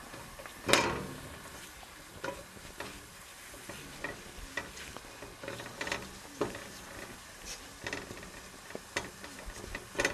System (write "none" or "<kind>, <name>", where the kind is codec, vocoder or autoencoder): none